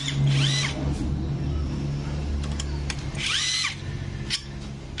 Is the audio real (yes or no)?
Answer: yes